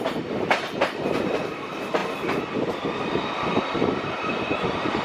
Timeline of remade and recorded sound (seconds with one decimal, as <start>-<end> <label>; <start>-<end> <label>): 0.0-5.0 recorded